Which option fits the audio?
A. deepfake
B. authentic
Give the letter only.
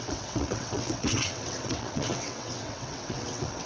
A